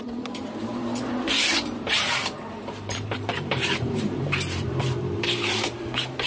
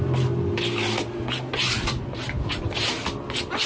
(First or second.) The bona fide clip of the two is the second